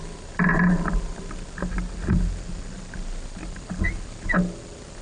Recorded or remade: recorded